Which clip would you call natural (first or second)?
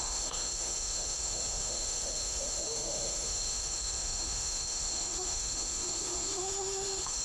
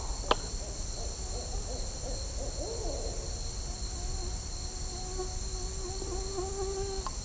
second